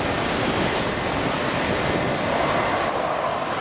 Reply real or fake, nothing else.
real